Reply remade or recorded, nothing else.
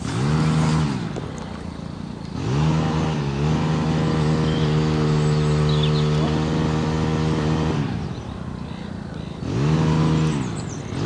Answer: recorded